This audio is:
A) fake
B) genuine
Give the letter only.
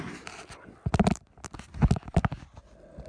B